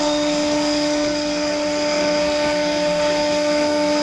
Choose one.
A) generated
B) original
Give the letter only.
A